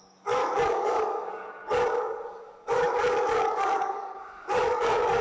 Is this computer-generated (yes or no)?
yes